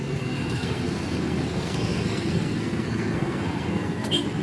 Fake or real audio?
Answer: fake